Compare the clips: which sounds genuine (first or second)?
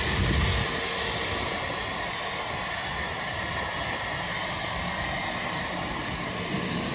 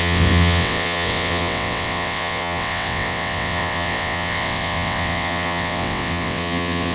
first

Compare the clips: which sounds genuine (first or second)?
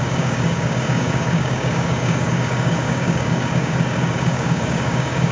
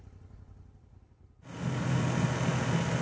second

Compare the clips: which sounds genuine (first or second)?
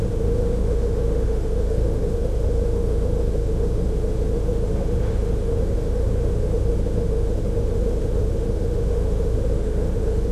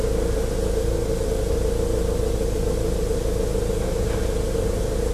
second